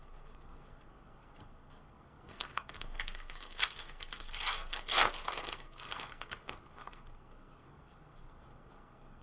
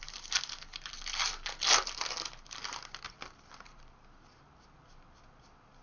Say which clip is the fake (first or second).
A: first